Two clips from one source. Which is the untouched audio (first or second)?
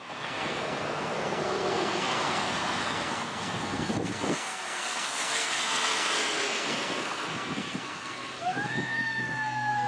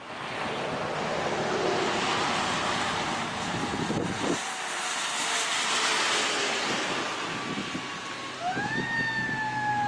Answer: second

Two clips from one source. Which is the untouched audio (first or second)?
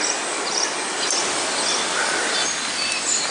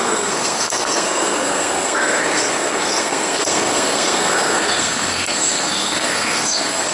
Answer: first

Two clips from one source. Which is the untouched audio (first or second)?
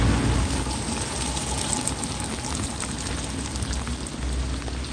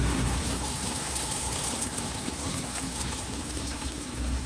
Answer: first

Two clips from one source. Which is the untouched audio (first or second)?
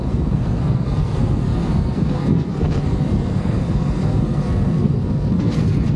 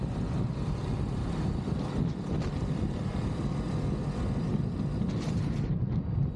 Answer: second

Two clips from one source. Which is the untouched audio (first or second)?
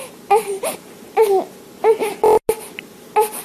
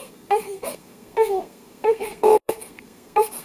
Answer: first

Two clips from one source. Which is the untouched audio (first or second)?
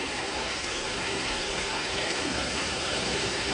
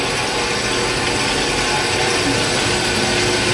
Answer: second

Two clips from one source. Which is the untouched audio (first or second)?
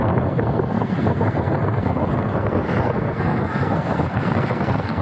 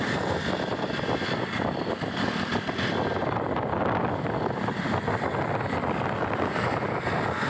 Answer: second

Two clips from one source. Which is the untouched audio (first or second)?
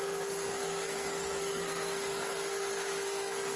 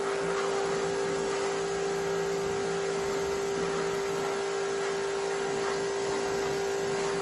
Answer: second